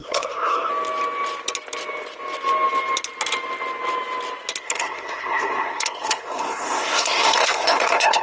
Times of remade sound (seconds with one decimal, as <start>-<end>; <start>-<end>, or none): 0.0-0.7; 4.6-8.2

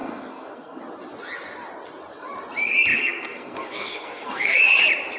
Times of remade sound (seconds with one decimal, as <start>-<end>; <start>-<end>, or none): 0.0-0.8; 2.9-4.6

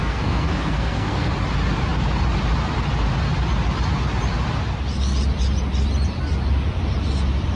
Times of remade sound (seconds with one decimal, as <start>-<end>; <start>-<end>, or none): 0.0-1.3

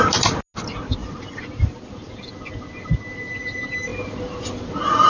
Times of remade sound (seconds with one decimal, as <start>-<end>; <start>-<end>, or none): none

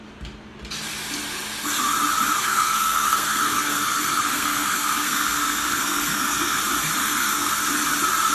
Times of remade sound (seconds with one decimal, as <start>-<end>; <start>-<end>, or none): 2.4-6.6; 7.0-7.5